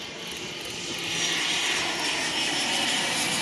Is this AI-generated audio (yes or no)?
no